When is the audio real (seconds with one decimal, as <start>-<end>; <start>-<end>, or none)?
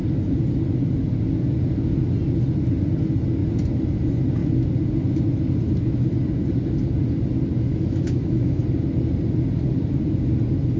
0.0-7.7; 8.6-10.8